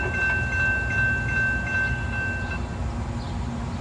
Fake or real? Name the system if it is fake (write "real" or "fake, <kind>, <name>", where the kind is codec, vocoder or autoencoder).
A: real